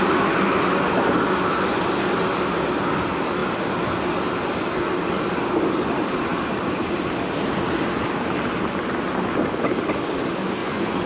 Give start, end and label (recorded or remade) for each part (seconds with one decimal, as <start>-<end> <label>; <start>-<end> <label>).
0.0-10.6 recorded; 10.6-11.1 remade